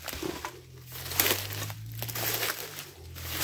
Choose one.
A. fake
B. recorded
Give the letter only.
B